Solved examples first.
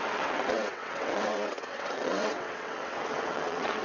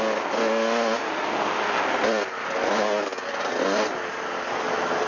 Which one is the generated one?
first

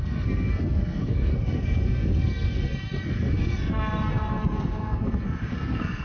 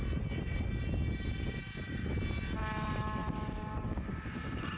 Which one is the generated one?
first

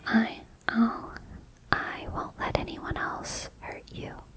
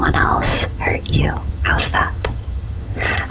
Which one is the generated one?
second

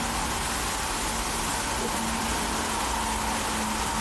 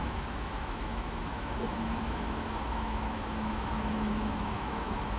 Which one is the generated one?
second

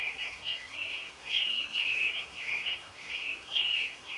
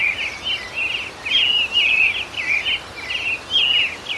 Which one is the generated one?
first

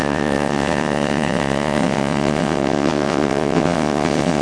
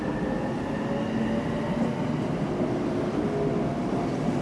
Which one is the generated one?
first